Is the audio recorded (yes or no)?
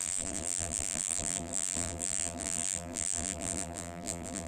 no